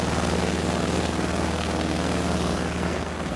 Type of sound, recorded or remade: remade